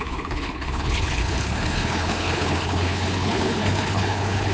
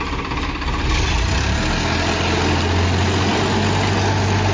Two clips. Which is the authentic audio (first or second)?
second